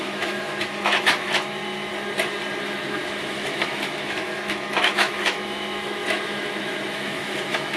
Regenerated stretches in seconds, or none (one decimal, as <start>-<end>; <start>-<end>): 0.0-1.6; 2.6-7.8